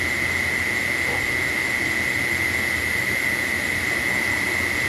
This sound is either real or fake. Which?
real